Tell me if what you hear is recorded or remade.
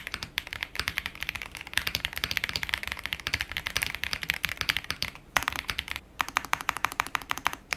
remade